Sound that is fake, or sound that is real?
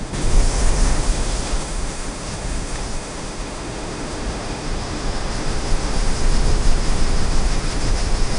fake